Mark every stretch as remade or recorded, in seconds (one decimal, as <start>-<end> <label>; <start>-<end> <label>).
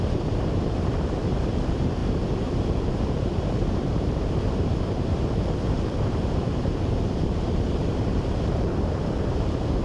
0.0-9.8 remade